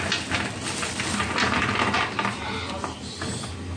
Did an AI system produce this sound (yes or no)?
no